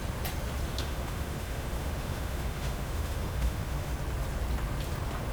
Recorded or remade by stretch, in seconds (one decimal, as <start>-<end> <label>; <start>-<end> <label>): 0.0-0.7 recorded; 0.7-3.9 remade; 3.9-5.3 recorded